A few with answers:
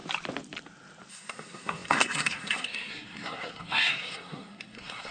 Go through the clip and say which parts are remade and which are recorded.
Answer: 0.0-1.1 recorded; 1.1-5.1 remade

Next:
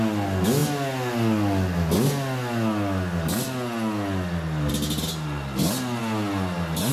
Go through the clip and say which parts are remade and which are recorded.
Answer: 0.0-6.9 recorded

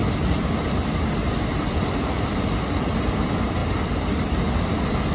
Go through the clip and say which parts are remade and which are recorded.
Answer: 0.0-5.1 recorded